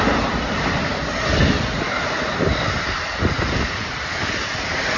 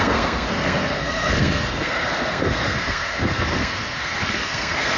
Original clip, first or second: first